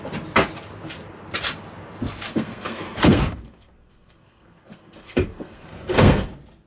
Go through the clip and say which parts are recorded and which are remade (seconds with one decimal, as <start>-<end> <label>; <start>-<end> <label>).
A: 0.0-2.3 recorded; 2.3-6.3 remade; 6.3-6.7 recorded